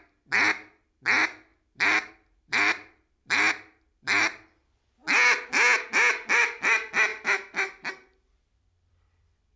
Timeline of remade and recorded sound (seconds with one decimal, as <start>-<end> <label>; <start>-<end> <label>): 0.0-5.0 remade; 5.0-6.1 recorded; 6.1-9.6 remade